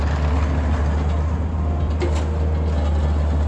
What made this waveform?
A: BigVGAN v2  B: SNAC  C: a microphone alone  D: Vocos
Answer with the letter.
C